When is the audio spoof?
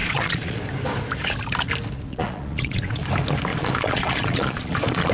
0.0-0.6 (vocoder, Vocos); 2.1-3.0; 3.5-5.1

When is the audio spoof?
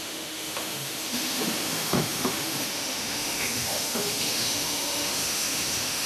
0.0-6.1 (autoencoder, DAC-VAE)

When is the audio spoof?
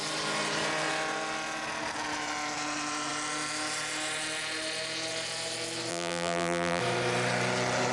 5.9-6.8 (vocoder, BigVGAN v2)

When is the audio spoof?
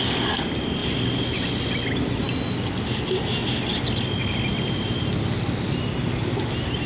none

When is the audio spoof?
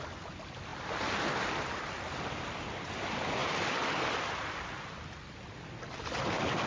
none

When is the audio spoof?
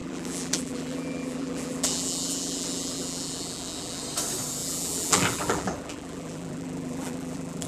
0.0-4.0 (vocoder, BigVGAN v2); 4.6-7.7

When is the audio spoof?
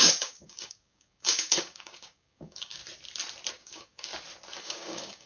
0.0-2.8 (codec, DAC); 3.5-4.1; 4.6-5.3